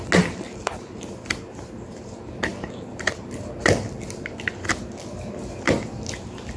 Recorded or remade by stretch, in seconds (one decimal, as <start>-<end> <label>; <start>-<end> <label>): 0.0-6.6 recorded